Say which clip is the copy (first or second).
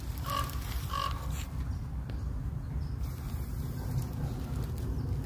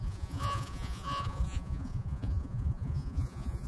second